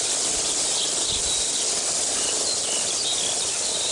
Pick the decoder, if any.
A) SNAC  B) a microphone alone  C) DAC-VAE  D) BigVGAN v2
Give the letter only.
B